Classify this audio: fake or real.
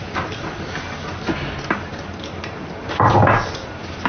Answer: real